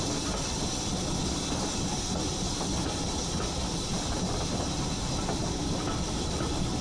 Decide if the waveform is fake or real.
real